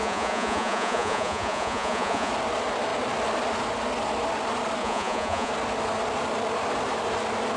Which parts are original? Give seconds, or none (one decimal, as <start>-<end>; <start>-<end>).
2.3-4.8; 5.5-7.6